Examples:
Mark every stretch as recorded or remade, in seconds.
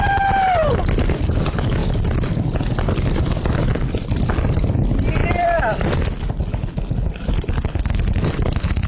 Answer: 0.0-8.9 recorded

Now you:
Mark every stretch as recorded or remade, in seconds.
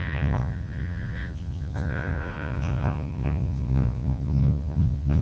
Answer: 0.0-5.2 remade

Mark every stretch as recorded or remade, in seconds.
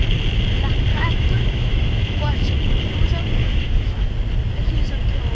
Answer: 0.0-0.9 recorded; 0.9-2.4 remade; 2.4-3.4 recorded; 3.4-4.1 remade; 4.1-5.3 recorded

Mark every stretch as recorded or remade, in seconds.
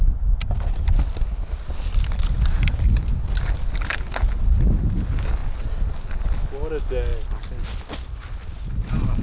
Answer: 0.0-9.2 recorded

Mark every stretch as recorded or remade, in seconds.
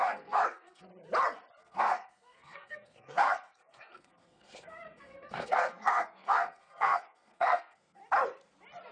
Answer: 0.0-0.9 remade; 0.9-1.6 recorded; 1.6-8.0 remade; 8.0-8.9 recorded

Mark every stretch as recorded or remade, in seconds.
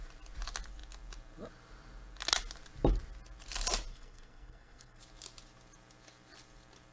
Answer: 0.0-3.9 recorded; 3.9-5.0 remade; 5.0-6.9 recorded